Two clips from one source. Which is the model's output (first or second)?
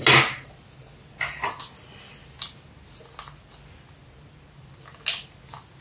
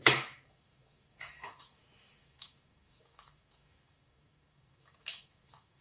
second